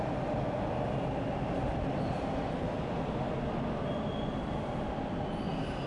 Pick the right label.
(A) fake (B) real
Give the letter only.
B